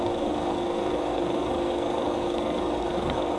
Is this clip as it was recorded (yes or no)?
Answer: no